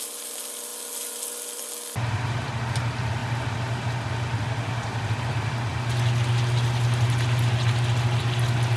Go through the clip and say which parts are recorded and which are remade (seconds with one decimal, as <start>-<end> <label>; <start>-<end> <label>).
0.0-8.8 recorded